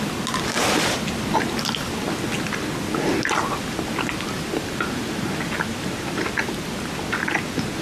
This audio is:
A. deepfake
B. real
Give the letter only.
B